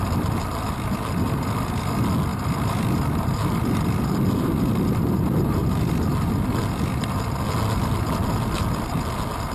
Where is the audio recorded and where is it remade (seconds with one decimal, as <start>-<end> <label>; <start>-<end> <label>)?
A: 0.0-2.3 recorded; 2.3-4.8 remade; 4.8-5.6 recorded; 5.6-6.6 remade; 6.6-9.5 recorded